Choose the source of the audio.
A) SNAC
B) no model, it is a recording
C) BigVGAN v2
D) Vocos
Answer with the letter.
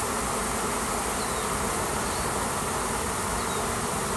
B